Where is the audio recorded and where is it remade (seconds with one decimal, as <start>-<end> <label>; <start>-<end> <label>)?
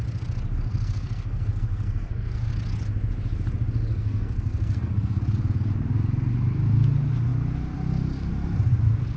0.0-0.7 recorded; 0.7-2.5 remade; 2.5-3.9 recorded; 3.9-5.2 remade; 5.2-9.2 recorded